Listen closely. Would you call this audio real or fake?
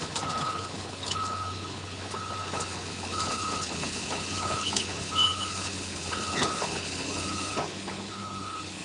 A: fake